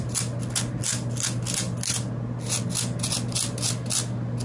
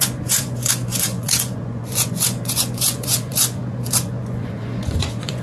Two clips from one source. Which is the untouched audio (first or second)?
first